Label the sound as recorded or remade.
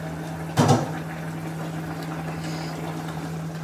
recorded